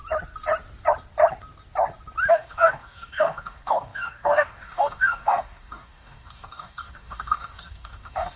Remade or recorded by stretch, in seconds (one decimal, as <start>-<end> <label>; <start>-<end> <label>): 0.0-2.3 recorded; 2.3-8.4 remade